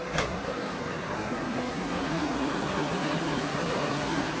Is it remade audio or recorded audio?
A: remade